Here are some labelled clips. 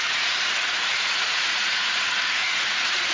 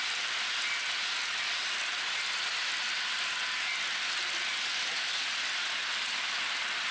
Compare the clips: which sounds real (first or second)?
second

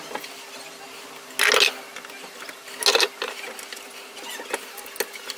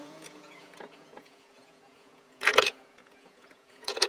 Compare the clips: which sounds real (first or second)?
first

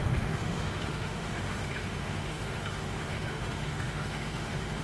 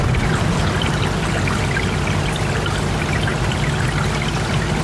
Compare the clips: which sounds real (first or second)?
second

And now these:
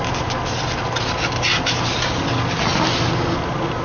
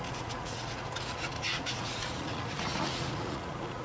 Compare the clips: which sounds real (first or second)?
first